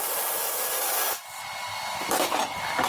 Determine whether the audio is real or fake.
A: real